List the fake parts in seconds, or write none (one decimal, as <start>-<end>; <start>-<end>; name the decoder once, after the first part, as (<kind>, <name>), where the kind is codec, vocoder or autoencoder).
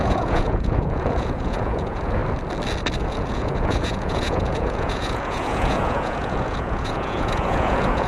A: 0.0-2.2 (vocoder, Vocos); 3.0-8.1